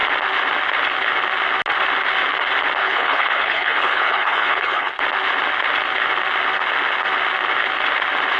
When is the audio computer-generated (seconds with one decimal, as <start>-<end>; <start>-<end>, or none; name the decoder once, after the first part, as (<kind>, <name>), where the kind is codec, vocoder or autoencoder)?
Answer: 2.8-4.9 (codec, HILCodec)